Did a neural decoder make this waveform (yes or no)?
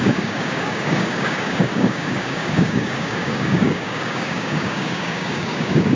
yes